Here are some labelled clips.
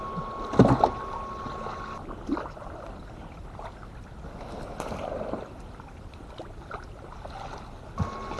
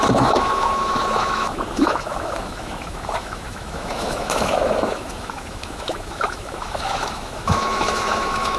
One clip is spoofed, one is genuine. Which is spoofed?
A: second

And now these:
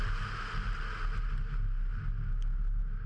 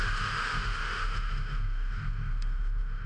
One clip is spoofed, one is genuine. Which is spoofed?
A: second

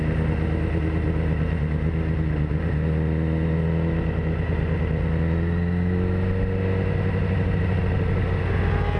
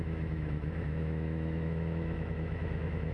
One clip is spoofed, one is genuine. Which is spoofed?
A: second